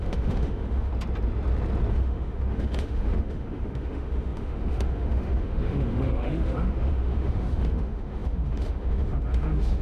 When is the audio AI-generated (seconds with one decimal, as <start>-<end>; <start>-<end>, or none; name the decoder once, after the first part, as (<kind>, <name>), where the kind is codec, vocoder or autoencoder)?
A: 0.0-0.9 (autoencoder, DAC-VAE); 1.9-9.8